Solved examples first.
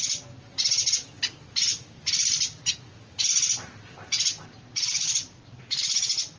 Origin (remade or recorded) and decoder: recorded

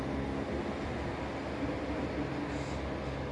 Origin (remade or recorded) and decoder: recorded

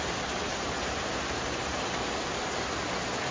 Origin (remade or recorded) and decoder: recorded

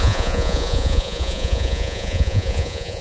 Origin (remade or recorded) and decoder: remade, vocoder, Vocos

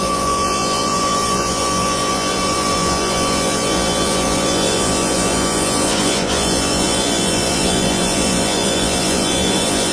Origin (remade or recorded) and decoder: remade, vocoder, Vocos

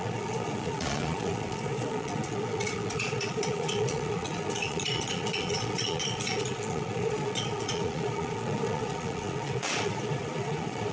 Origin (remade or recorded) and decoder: remade, vocoder, Vocos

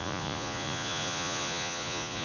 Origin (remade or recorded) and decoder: remade, vocoder, Vocos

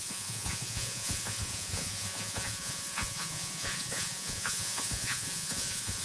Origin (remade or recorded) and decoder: remade, vocoder, Vocos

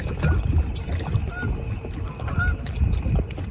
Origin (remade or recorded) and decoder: recorded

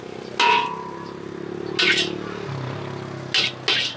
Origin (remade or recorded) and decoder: recorded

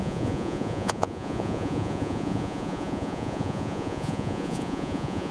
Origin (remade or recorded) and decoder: remade, vocoder, Vocos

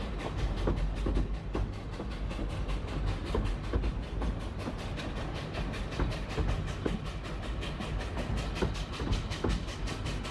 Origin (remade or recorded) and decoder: recorded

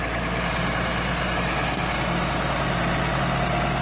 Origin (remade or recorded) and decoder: recorded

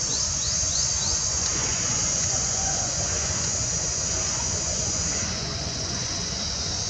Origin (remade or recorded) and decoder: remade, vocoder, Vocos